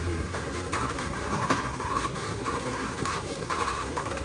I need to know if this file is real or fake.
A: fake